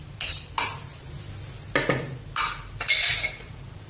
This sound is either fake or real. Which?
real